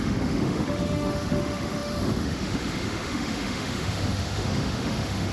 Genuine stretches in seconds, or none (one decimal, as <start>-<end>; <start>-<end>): none